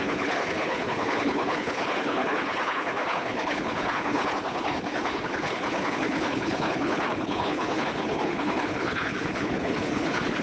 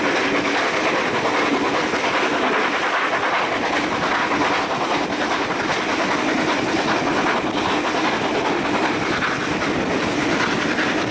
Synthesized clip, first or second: first